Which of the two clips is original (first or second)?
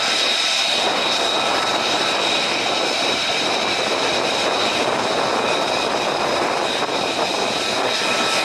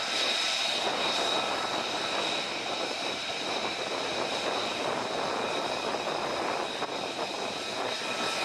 first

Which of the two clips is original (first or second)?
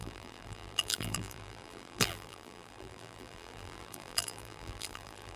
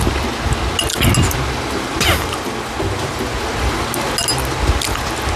second